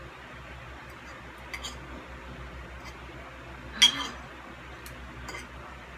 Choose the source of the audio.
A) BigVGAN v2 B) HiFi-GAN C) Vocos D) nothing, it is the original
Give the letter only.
D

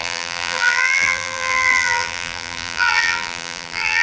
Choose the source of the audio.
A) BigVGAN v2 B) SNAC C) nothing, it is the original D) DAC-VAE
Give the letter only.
A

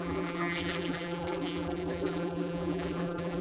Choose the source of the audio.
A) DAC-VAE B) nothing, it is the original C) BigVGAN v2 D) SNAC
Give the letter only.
C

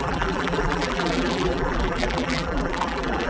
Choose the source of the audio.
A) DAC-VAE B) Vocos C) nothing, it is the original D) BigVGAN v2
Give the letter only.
D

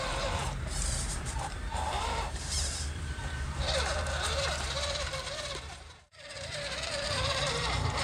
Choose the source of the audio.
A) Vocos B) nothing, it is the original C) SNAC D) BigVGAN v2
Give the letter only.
D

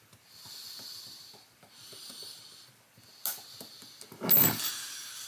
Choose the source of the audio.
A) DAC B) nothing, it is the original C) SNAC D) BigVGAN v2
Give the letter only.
B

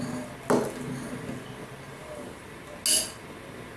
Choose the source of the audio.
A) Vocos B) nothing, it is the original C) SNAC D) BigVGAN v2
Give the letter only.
B